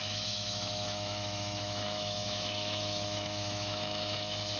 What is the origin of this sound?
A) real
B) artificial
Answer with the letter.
B